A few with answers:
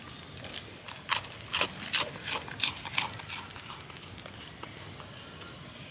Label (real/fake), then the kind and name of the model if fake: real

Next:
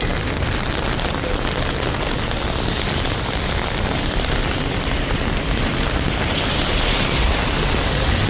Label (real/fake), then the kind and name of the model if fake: real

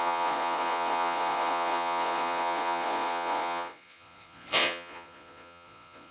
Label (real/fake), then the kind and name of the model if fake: fake, vocoder, Vocos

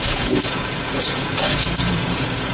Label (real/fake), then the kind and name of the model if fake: fake, vocoder, Vocos